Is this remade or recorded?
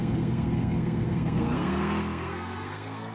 remade